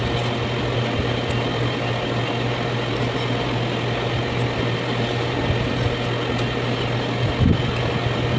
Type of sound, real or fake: real